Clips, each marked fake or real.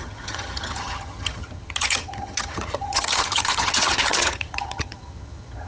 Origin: fake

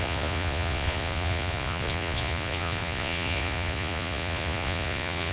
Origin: fake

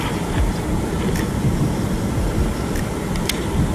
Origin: real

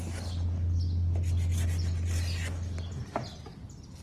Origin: real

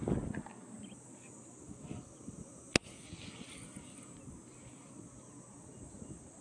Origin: real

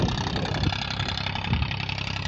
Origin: real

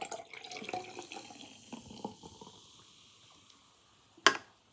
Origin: real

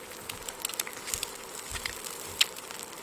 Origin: real